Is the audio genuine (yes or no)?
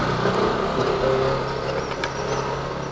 yes